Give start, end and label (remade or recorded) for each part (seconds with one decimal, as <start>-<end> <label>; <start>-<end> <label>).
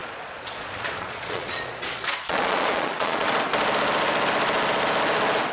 0.0-3.3 remade; 3.3-5.5 recorded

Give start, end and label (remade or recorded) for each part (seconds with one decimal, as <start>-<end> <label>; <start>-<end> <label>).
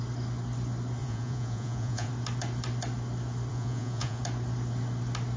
0.0-1.0 recorded; 1.0-2.1 remade; 2.1-3.5 recorded; 3.5-4.2 remade; 4.2-5.4 recorded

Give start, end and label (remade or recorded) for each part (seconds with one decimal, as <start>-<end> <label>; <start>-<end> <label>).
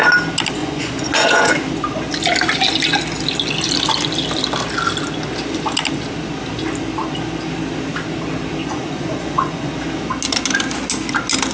0.0-0.6 recorded; 0.6-1.5 remade; 1.5-8.6 recorded; 8.6-9.7 remade; 9.7-11.5 recorded